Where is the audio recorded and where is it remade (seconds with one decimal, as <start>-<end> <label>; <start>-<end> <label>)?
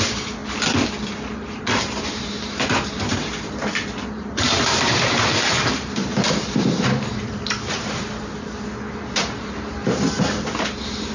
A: 0.0-0.4 remade; 0.4-1.1 recorded; 1.1-8.3 remade; 8.3-9.1 recorded; 9.1-11.1 remade